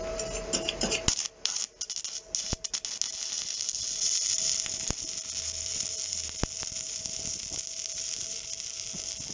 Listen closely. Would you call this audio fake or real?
real